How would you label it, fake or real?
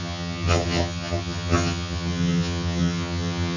fake